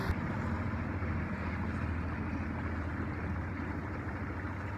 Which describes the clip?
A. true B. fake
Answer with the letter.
A